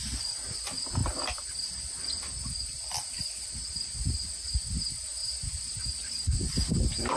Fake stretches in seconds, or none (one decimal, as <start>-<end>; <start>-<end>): none